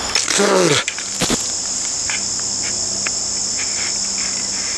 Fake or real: real